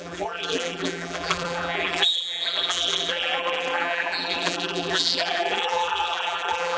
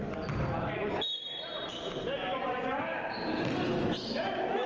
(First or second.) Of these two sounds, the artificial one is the first